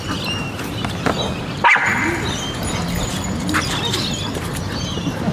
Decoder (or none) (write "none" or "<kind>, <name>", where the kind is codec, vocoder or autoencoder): none